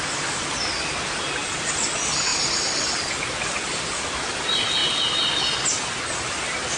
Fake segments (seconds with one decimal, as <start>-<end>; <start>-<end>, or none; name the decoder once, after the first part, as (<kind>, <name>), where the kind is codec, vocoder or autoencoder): none